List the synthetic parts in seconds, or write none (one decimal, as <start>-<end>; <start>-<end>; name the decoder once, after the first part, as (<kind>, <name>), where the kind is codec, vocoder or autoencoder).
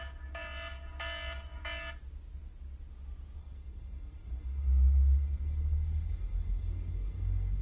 3.4-7.6 (codec, SNAC)